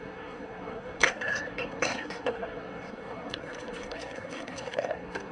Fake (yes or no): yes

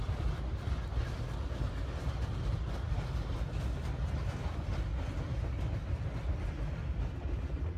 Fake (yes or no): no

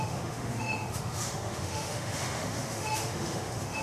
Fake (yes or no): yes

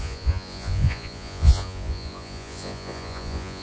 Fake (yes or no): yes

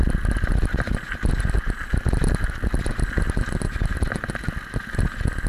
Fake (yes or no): no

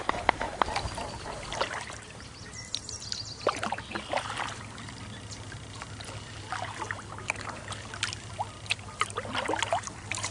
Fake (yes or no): no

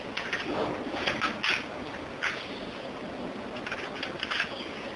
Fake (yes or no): no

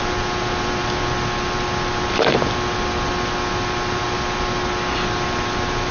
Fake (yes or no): no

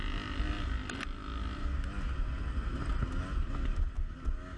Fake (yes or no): no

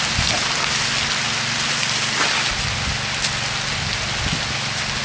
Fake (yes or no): no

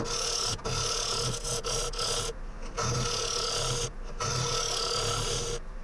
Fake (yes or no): no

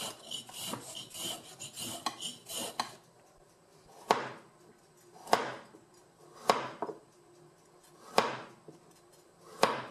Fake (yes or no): no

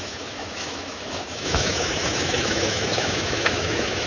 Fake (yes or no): yes